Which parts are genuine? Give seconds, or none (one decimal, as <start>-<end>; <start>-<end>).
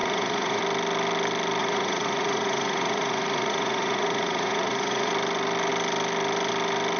0.6-1.6; 5.1-7.0